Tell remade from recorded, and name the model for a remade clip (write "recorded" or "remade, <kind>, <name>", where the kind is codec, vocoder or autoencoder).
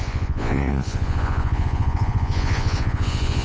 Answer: remade, vocoder, Vocos